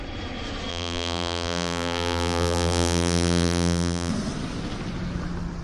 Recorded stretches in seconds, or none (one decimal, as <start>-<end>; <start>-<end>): 0.0-0.7; 4.1-5.6